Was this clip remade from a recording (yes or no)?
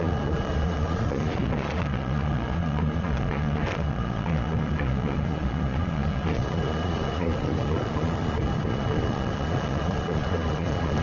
yes